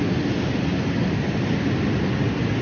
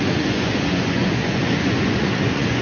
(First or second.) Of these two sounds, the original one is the first